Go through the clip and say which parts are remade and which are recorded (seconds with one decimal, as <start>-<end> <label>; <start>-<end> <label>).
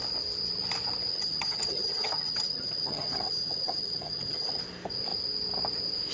0.0-1.1 recorded; 1.1-4.6 remade; 4.6-6.1 recorded